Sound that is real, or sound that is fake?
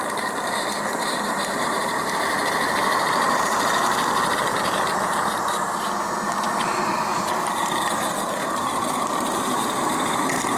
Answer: fake